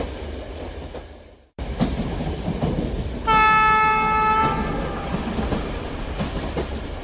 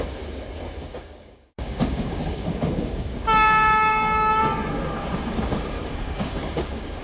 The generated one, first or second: second